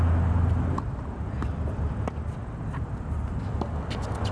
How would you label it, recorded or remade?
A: recorded